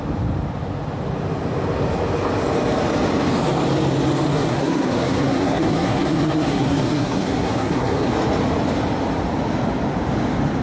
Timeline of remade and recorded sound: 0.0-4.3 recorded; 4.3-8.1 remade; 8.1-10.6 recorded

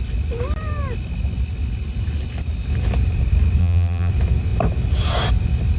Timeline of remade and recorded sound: 0.0-3.6 recorded; 3.6-4.1 remade; 4.1-5.8 recorded

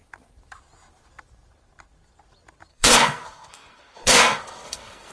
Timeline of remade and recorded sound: 0.0-2.7 recorded; 2.7-5.1 remade

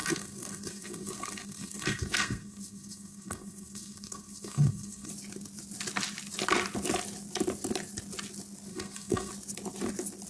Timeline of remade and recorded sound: 0.0-5.1 remade; 5.1-8.7 recorded; 8.7-9.3 remade; 9.3-10.3 recorded

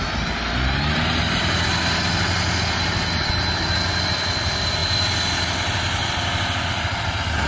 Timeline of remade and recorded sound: 0.0-7.5 recorded

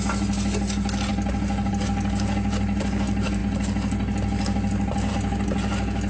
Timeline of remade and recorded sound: 0.0-6.1 recorded